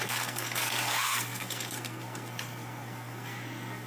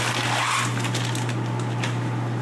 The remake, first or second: first